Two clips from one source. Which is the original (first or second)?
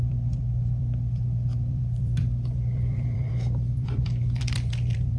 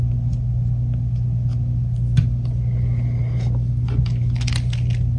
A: second